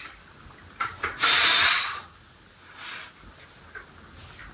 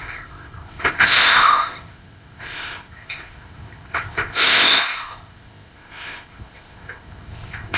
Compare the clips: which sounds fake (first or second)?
second